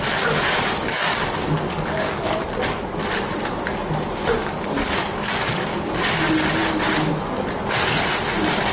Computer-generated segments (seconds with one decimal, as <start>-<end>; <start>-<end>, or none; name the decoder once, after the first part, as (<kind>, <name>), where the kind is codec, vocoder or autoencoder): 0.9-2.4 (codec, DAC); 4.4-5.9